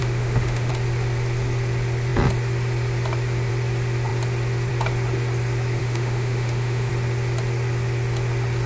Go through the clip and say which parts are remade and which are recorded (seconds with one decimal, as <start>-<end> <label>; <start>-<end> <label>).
0.0-0.7 remade; 0.7-5.8 recorded; 5.8-6.9 remade; 6.9-8.7 recorded